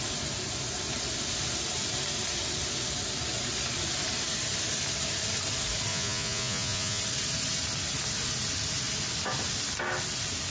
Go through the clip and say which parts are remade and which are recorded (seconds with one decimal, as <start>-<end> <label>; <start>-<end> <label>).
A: 0.0-5.9 recorded; 5.9-7.0 remade; 7.0-10.5 recorded